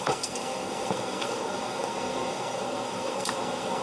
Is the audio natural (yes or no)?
no